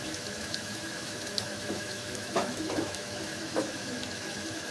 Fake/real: fake